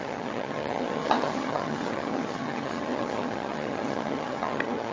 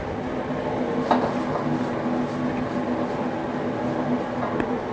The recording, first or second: second